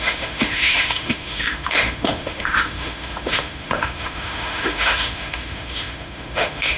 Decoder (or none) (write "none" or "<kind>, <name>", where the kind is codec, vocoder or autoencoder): autoencoder, DAC-VAE